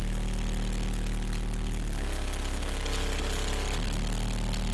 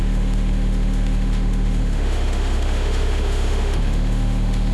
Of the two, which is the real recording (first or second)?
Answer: first